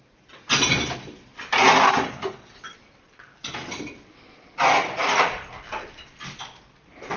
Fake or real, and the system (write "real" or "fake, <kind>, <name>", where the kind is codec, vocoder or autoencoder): real